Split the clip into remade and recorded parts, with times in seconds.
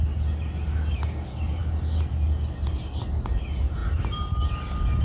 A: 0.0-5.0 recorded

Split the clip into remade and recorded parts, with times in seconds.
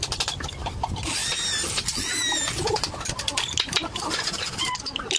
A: 0.0-5.2 recorded